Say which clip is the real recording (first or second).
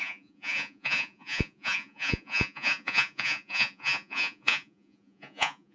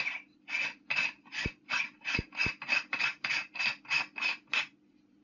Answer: second